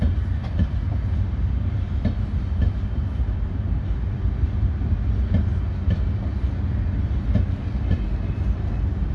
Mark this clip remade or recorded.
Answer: recorded